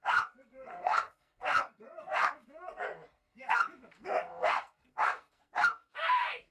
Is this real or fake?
fake